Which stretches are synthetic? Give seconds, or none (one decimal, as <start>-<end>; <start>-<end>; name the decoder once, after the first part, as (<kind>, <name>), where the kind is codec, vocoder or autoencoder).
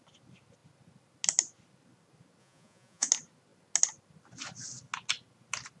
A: 2.4-3.1 (vocoder, Vocos)